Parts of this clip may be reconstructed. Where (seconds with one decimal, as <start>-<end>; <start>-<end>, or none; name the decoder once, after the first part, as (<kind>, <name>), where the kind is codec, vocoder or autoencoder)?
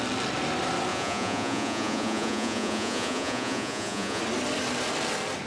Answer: 0.9-4.2 (vocoder, Vocos)